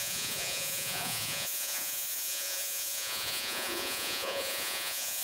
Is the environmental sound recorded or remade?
remade